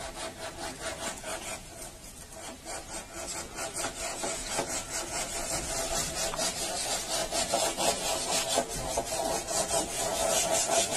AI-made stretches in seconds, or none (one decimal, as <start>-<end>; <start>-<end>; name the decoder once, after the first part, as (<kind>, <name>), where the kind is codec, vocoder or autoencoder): 1.3-2.1 (vocoder, Vocos); 4.1-5.5; 7.2-11.0